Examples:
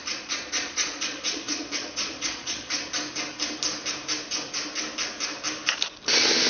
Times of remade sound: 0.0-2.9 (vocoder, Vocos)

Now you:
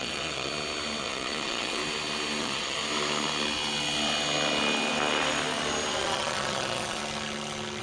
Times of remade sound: 0.0-0.5 (vocoder, Vocos); 1.0-1.8; 2.4-2.8; 6.0-7.0

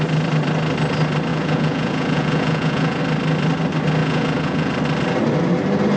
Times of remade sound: 1.3-3.0 (vocoder, Vocos); 4.0-4.7

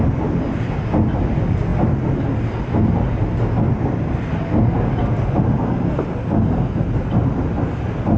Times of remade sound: none

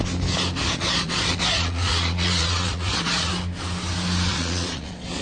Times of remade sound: 0.6-3.3 (vocoder, Vocos); 4.3-5.2